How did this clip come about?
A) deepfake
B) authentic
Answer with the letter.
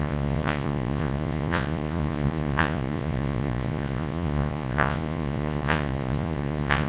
A